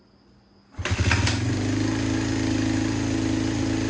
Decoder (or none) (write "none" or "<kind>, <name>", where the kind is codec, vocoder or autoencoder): none